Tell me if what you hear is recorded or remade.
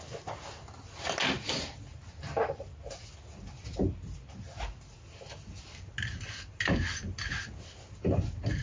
recorded